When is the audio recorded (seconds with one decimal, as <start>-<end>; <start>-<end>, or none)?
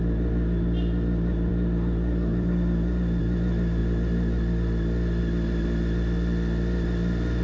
0.0-7.4